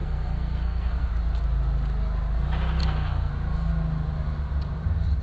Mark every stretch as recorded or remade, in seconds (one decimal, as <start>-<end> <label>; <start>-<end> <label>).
0.0-1.1 remade; 1.1-2.8 recorded; 2.8-3.3 remade; 3.3-5.2 recorded